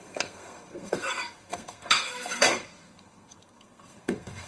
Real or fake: fake